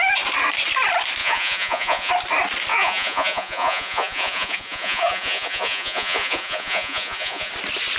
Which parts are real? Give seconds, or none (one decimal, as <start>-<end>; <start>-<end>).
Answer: 0.0-1.2; 2.1-2.7; 7.5-8.0